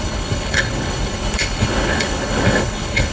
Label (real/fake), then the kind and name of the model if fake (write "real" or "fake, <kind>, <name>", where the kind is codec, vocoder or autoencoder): fake, codec, HILCodec